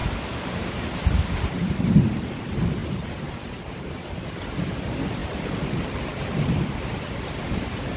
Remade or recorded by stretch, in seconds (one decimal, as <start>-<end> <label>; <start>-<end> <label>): 0.0-1.7 remade; 1.7-2.8 recorded; 2.8-4.2 remade; 4.2-5.2 recorded; 5.2-6.5 remade; 6.5-8.0 recorded